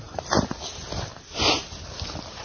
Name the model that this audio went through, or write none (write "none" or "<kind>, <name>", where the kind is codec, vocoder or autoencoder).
none